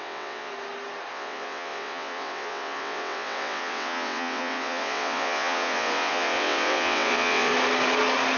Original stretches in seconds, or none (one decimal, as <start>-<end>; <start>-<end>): 0.5-1.1; 7.5-8.4